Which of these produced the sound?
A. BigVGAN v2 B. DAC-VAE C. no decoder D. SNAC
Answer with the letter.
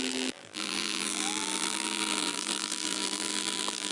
A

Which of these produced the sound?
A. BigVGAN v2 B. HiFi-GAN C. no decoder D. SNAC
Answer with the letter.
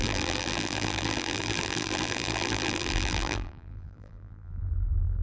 A